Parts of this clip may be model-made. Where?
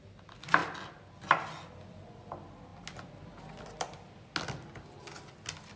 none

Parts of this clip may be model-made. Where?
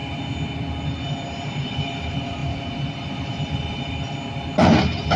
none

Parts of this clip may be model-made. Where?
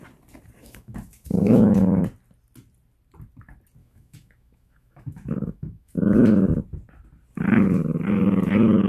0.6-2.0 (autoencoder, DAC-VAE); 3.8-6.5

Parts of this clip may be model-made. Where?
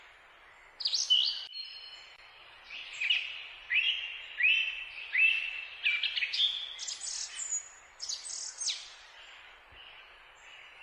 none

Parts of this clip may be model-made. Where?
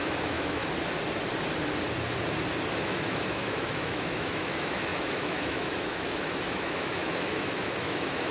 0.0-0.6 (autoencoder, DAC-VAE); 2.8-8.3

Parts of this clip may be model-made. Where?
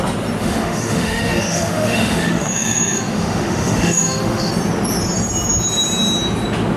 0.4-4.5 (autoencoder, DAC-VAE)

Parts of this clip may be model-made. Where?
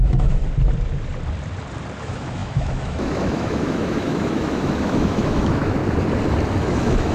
0.0-0.4 (autoencoder, DAC-VAE); 2.0-5.8; 6.6-7.1